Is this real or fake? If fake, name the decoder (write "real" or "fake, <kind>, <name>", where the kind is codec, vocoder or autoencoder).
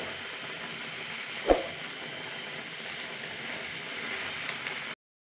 real